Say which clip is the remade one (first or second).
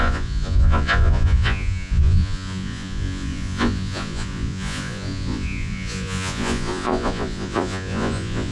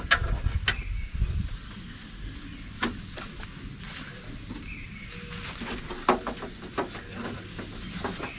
first